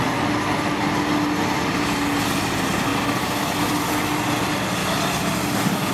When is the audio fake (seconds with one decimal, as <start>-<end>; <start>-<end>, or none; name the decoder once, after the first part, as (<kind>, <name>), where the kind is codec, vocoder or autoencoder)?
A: none